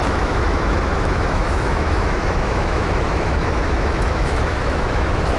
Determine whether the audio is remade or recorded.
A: remade